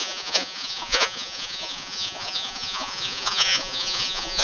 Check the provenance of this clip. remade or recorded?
remade